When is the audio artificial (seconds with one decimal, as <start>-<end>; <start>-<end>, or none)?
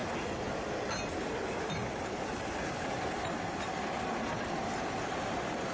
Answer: none